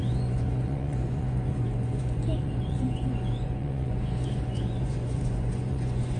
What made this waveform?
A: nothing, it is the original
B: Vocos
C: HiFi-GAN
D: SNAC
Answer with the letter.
B